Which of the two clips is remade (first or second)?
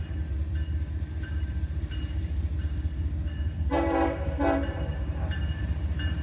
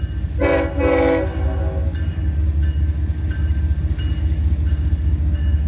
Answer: first